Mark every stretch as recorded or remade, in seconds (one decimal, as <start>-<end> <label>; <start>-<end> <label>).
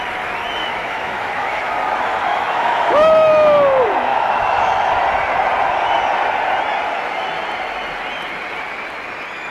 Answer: 0.0-0.6 recorded; 0.6-1.8 remade; 1.8-2.3 recorded; 2.3-3.3 remade; 3.3-4.1 recorded; 4.1-4.9 remade; 4.9-9.5 recorded